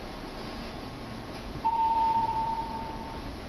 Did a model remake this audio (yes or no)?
yes